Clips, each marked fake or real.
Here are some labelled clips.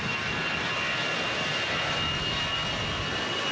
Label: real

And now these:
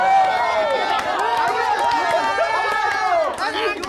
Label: real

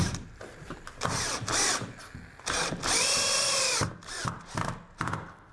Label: real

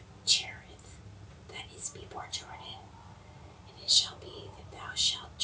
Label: real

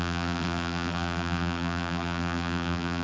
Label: fake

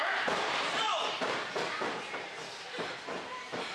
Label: real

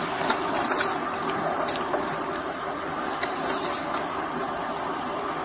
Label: fake